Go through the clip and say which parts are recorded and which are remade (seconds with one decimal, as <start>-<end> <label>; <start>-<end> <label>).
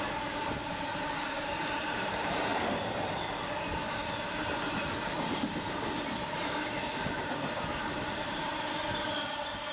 0.0-2.5 remade; 2.5-7.8 recorded; 7.8-8.5 remade; 8.5-9.7 recorded